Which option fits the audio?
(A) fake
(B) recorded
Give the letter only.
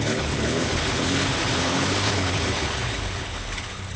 A